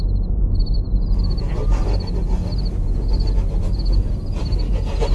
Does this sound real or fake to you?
real